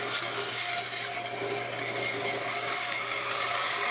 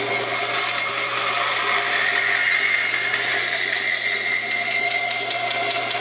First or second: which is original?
second